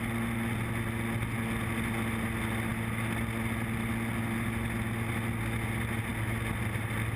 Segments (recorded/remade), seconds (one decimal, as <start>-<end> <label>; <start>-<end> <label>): 0.0-7.2 recorded